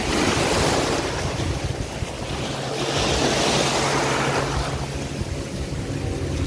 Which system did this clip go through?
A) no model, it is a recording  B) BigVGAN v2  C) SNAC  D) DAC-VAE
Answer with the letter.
A